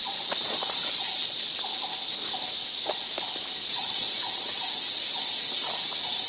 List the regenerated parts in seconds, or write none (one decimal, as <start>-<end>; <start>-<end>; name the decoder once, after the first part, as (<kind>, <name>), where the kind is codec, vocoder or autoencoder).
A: 0.0-1.4 (vocoder, Vocos); 3.6-4.6